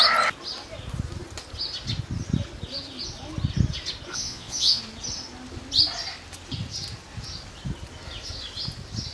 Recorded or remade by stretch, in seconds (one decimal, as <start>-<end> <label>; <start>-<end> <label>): 0.0-4.1 recorded; 4.1-4.8 remade; 4.8-9.1 recorded